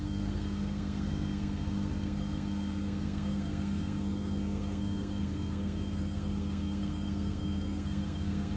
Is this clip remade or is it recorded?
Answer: remade